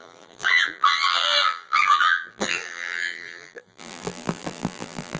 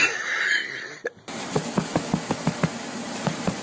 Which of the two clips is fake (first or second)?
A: first